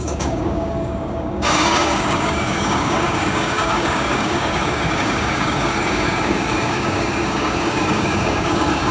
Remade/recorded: remade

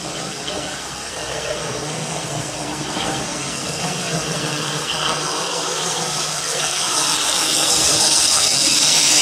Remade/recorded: remade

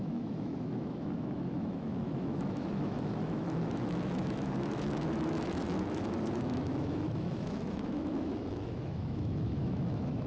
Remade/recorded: remade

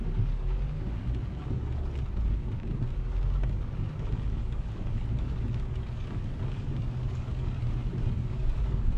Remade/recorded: remade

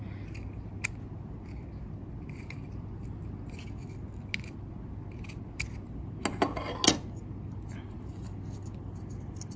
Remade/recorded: recorded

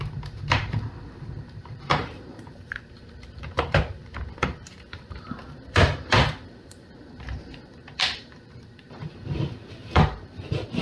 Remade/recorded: remade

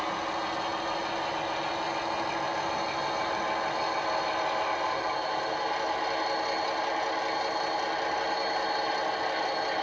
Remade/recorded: recorded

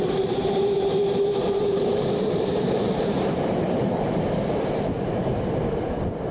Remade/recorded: remade